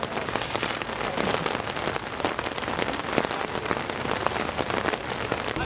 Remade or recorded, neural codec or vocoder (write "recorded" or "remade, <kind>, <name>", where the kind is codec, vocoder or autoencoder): recorded